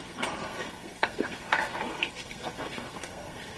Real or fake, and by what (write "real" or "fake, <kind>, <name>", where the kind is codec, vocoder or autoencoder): fake, codec, SNAC